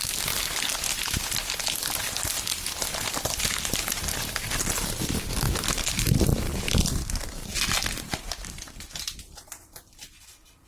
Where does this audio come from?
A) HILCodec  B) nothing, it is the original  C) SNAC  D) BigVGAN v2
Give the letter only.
B